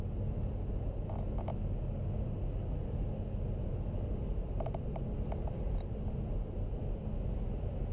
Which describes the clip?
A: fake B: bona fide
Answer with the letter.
B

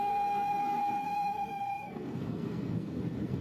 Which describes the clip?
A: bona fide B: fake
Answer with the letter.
B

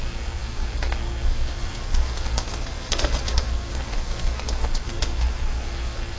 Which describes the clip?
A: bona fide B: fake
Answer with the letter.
B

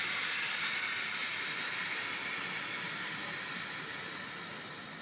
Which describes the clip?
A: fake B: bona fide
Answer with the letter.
B